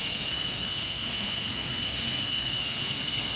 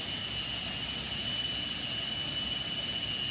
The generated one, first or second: first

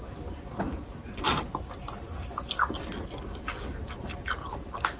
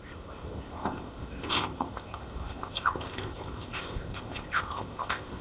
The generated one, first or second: second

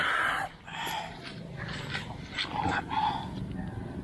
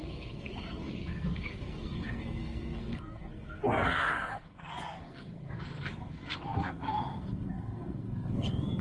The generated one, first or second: second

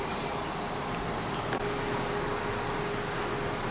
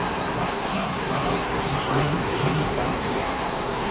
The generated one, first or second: second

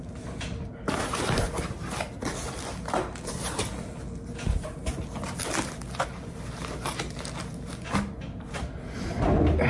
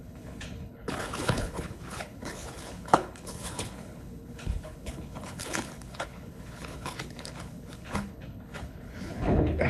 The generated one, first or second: second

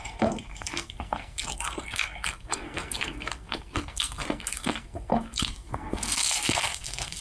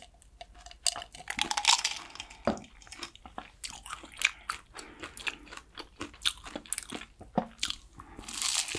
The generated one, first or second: first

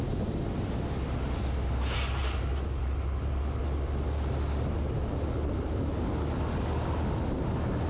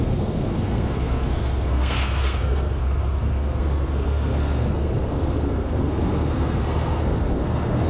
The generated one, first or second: second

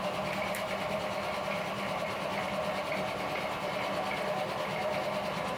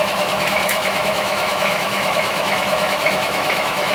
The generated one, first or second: second